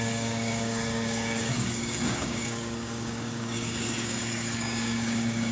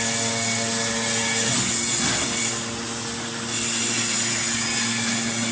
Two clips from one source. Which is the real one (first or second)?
second